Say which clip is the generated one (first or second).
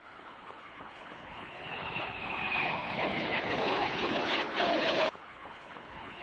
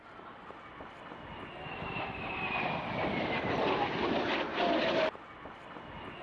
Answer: first